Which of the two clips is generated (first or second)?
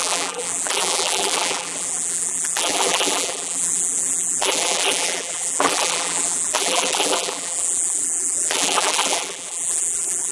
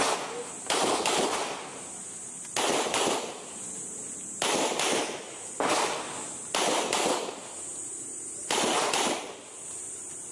first